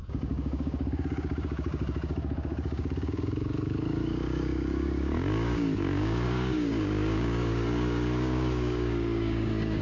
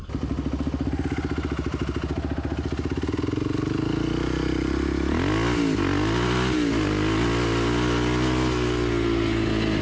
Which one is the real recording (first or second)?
second